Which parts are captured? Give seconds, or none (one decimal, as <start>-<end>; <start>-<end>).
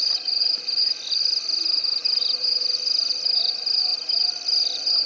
0.0-5.1